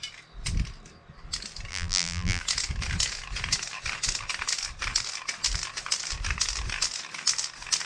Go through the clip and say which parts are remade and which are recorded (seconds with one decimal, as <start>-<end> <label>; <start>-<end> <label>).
0.0-1.7 recorded; 1.7-2.4 remade; 2.4-7.9 recorded